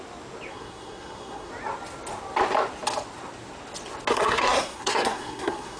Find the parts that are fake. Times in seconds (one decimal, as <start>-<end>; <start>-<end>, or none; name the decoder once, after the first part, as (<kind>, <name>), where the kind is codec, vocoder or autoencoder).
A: 0.5-1.5 (codec, SNAC); 4.1-5.8